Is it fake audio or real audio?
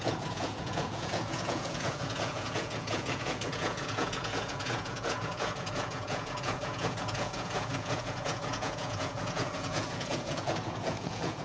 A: fake